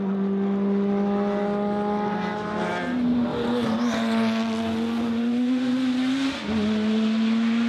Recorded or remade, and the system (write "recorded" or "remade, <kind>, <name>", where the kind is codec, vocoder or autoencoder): recorded